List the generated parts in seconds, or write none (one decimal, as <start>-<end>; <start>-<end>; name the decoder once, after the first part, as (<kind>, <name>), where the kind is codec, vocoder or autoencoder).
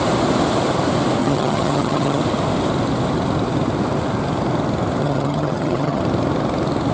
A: 1.2-2.2 (vocoder, HiFi-GAN); 5.0-6.0